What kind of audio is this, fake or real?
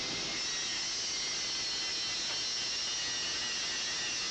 real